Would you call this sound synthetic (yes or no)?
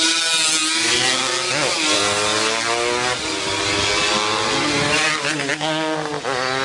no